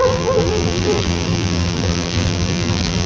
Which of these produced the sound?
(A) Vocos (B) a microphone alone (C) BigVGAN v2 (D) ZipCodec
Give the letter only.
C